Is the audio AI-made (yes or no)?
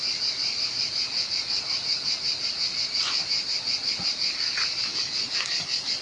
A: no